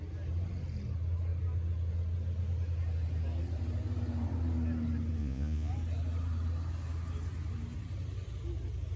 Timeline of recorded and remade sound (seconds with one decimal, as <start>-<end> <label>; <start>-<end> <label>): 0.0-5.2 recorded; 5.2-5.7 remade; 5.7-9.0 recorded